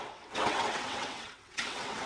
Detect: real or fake fake